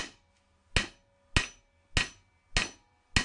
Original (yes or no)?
yes